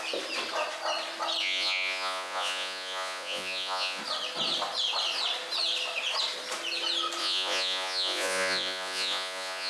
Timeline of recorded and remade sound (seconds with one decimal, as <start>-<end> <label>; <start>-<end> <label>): 0.0-1.4 recorded; 1.4-4.0 remade; 4.0-7.2 recorded; 7.2-9.7 remade